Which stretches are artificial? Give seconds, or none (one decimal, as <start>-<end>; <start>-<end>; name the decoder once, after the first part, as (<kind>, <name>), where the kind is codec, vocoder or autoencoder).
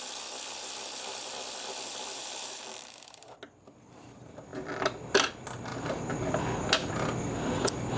none